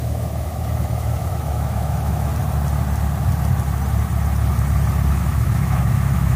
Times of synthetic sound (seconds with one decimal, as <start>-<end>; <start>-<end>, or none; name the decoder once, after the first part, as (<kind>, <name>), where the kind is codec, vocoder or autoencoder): 0.0-2.3 (autoencoder, DAC-VAE); 5.1-6.4